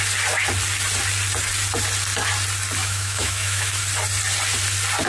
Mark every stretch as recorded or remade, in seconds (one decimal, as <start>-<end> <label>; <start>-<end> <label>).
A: 0.0-2.8 recorded; 2.8-3.8 remade; 3.8-5.1 recorded

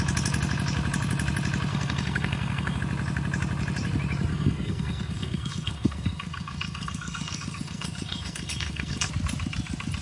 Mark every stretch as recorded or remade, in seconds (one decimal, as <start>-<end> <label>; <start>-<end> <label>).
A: 0.0-1.7 recorded; 1.7-2.8 remade; 2.8-4.3 recorded; 4.3-9.1 remade; 9.1-10.0 recorded

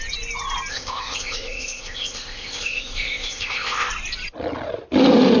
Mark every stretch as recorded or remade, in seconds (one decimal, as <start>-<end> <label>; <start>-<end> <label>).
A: 0.0-0.7 recorded; 0.7-3.9 remade; 3.9-5.4 recorded

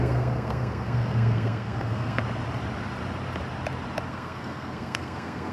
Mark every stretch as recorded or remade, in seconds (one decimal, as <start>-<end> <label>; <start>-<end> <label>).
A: 0.0-2.2 remade; 2.2-4.1 recorded; 4.1-5.5 remade

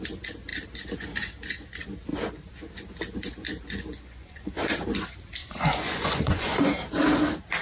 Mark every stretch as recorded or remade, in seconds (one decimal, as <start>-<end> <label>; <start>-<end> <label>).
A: 0.0-3.9 recorded; 3.9-4.5 remade; 4.5-5.4 recorded; 5.4-6.8 remade; 6.8-7.6 recorded